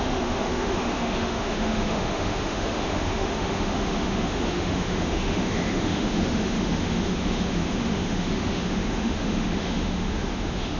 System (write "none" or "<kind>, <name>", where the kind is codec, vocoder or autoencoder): autoencoder, DAC-VAE